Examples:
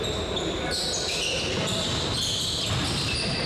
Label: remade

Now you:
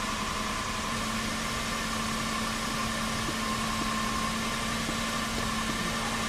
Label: recorded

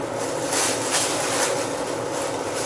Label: recorded